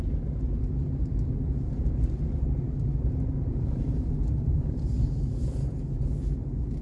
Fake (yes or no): no